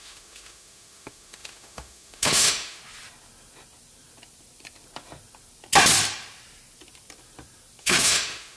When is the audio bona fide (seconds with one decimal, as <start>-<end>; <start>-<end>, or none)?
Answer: 2.8-7.8